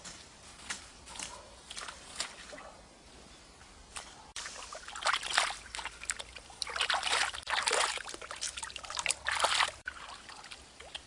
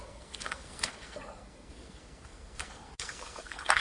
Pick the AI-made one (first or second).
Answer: second